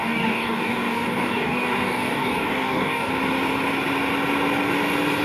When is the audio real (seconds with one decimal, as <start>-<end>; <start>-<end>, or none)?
3.1-5.2